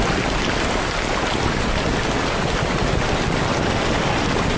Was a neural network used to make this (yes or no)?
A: no